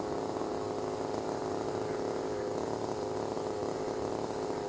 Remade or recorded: recorded